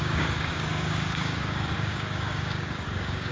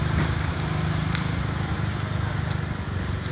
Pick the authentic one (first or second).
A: second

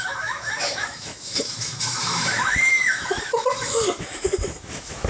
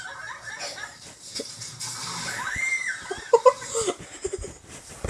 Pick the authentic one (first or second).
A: second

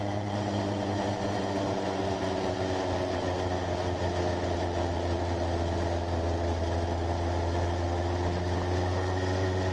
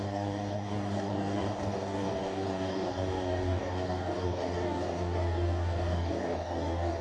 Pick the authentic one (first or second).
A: first